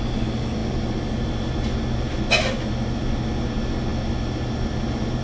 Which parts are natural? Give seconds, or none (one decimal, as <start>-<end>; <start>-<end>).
0.0-5.2